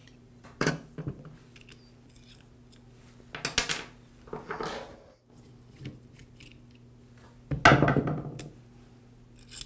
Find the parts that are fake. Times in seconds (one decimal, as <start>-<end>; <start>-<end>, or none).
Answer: 0.0-0.7